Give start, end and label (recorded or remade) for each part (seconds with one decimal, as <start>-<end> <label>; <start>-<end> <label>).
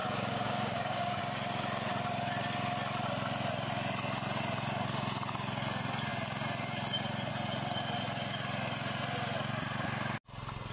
0.0-1.2 remade; 1.2-10.7 recorded